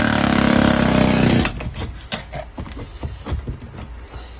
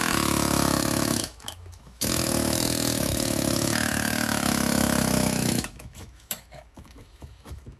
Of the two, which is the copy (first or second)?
second